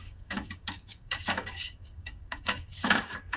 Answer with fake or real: fake